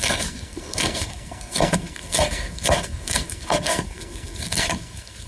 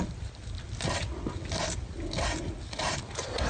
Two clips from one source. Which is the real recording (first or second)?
second